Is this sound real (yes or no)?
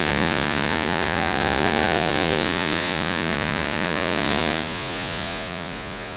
no